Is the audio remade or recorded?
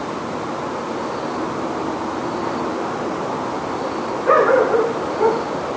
recorded